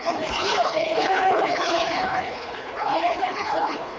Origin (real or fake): fake